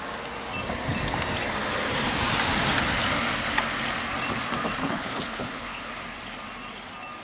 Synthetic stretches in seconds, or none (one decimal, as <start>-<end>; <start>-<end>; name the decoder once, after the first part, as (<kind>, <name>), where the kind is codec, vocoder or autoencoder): 4.8-5.9 (codec, HILCodec)